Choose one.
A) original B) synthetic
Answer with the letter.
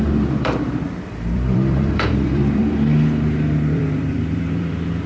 B